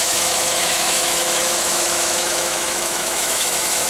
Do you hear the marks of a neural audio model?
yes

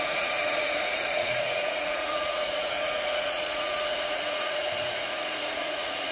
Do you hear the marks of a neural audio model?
yes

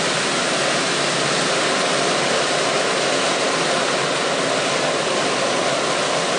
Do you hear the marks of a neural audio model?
no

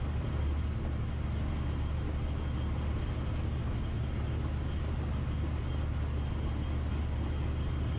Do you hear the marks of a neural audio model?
no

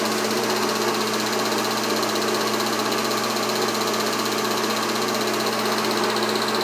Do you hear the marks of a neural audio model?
no